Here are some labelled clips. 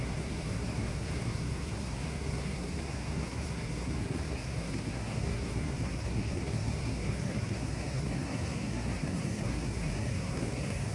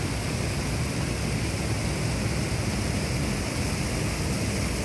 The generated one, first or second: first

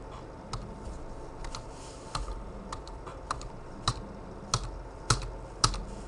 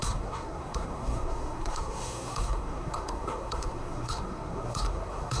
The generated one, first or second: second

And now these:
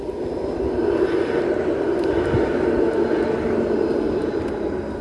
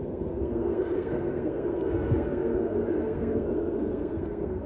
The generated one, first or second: second